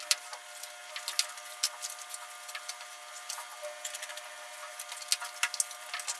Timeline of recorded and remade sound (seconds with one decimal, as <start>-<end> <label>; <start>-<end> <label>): 0.0-6.2 recorded